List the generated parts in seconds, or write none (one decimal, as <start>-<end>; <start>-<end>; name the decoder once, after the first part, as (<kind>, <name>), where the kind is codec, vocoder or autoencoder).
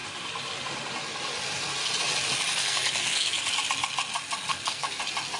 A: 2.6-3.4 (codec, SNAC); 4.5-5.0